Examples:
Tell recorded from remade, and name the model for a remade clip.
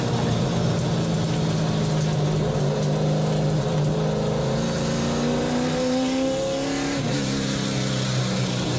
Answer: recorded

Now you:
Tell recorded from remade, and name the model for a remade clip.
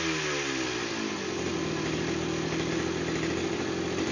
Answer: recorded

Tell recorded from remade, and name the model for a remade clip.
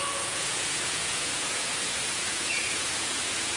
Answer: remade, vocoder, Vocos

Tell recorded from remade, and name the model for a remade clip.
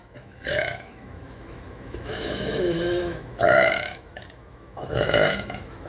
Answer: remade, autoencoder, DAC-VAE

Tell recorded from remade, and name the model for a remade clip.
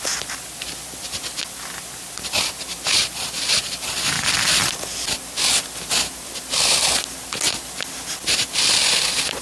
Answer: recorded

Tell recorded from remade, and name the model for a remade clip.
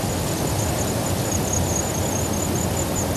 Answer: recorded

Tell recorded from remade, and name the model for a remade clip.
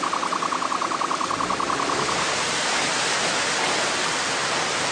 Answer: recorded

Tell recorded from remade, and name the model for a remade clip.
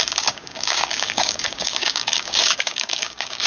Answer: remade, codec, DAC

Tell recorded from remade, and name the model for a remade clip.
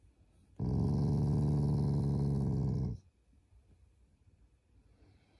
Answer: recorded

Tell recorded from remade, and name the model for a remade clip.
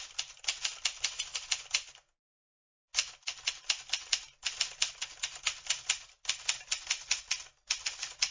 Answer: recorded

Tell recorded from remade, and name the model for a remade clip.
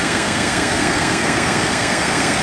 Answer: remade, codec, SNAC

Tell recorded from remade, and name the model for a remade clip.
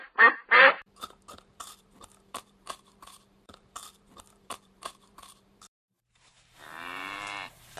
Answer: remade, vocoder, BigVGAN v2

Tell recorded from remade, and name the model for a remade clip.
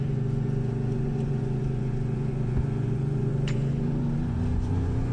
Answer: remade, vocoder, Vocos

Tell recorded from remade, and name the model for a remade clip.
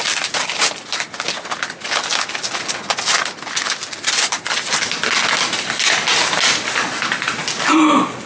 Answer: recorded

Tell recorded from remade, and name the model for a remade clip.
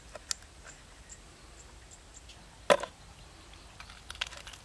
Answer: recorded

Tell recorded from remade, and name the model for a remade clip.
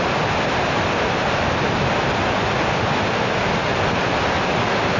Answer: recorded